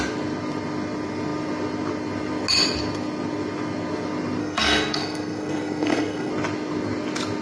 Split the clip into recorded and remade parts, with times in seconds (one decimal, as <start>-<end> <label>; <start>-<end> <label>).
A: 0.0-4.4 recorded; 4.4-6.3 remade; 6.3-7.4 recorded

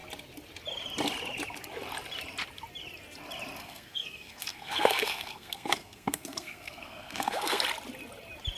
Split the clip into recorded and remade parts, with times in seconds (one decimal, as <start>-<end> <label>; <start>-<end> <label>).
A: 0.0-3.6 recorded; 3.6-7.6 remade; 7.6-8.6 recorded